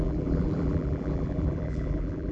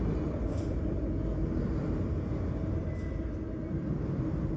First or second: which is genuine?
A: second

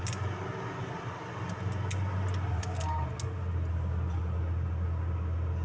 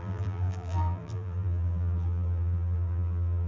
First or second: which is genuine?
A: first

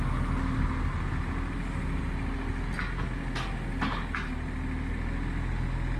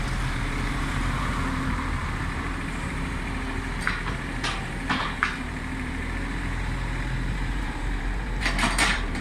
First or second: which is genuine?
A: first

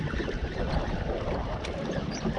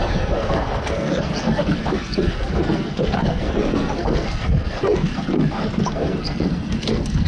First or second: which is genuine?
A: first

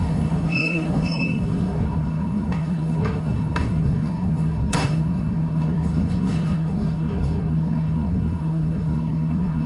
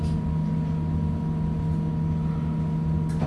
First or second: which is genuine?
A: second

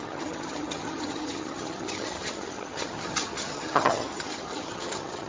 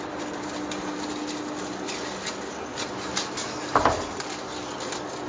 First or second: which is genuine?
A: second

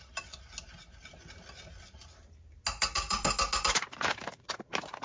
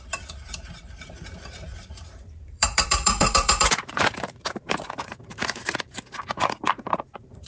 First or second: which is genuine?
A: first